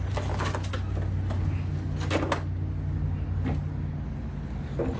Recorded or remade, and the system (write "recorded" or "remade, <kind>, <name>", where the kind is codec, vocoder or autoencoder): recorded